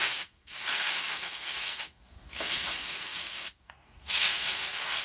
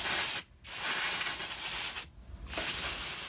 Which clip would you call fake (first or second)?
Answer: first